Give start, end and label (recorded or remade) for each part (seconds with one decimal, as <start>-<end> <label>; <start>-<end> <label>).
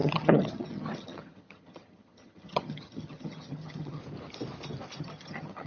0.0-4.0 remade; 4.0-5.0 recorded; 5.0-5.7 remade